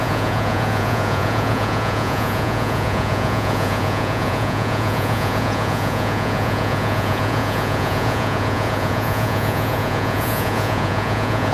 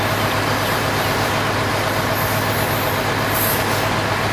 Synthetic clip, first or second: first